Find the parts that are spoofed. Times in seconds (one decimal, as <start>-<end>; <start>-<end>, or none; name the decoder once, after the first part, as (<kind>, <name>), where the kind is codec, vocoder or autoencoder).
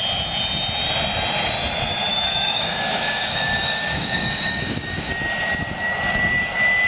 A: 2.1-5.1 (codec, DAC)